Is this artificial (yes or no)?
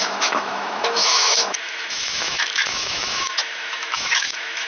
yes